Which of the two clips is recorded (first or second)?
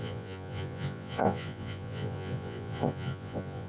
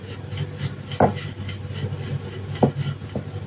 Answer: second